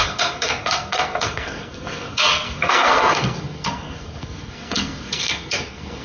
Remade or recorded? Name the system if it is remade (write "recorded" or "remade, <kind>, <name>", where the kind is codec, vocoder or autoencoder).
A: remade, codec, SNAC